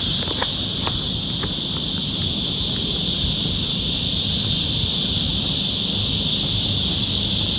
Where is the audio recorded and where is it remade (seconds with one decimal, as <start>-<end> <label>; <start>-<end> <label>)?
0.0-5.3 remade; 5.3-7.6 recorded